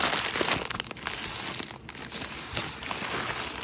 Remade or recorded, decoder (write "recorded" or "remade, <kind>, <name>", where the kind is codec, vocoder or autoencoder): recorded